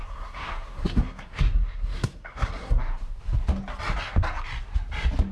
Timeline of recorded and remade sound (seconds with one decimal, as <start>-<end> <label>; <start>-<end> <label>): 0.0-3.2 remade; 3.2-5.3 recorded